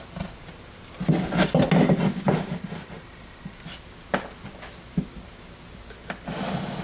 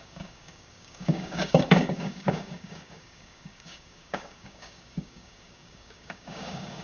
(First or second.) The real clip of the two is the first